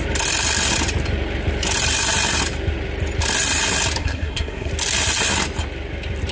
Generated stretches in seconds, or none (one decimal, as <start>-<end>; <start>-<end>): 4.0-4.7